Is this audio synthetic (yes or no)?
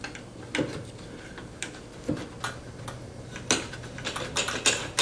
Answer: no